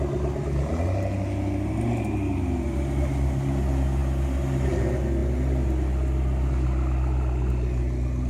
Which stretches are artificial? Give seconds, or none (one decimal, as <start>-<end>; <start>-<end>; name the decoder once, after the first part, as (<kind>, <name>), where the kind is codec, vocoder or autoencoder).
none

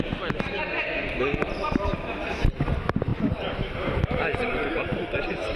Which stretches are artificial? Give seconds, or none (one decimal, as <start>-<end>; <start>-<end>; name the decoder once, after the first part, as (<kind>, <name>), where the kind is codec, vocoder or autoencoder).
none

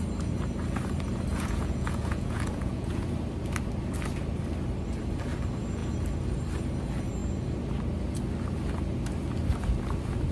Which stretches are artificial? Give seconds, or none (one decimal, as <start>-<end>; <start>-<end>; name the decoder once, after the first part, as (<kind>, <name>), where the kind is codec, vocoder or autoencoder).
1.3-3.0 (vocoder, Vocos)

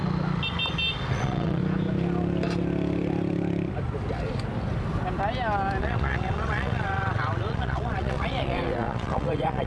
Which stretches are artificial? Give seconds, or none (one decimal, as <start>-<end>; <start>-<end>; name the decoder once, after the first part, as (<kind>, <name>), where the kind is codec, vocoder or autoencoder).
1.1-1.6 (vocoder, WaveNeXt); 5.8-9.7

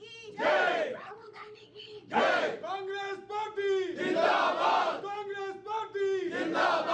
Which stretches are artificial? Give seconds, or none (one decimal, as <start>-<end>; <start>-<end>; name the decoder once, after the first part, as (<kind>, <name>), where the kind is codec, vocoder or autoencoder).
0.9-2.2 (codec, HILCodec)

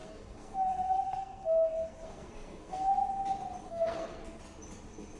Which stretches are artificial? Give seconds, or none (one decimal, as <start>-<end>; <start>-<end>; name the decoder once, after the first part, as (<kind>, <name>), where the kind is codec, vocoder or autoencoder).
0.0-2.9 (codec, SNAC); 3.7-4.4

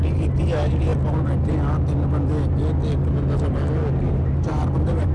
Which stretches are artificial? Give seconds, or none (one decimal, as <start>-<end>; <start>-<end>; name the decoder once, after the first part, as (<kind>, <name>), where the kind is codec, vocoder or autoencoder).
0.0-0.9 (vocoder, BigVGAN v2); 4.0-5.1

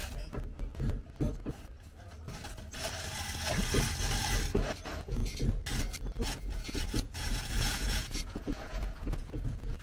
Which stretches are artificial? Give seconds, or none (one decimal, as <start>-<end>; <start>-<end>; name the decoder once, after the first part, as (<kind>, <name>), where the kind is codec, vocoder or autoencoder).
4.8-5.2 (vocoder, Vocos); 6.2-9.8